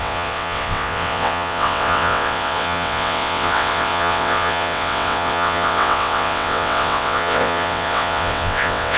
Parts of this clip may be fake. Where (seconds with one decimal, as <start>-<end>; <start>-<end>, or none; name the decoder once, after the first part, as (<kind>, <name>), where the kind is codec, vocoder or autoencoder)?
0.0-9.0 (vocoder, WaveNeXt)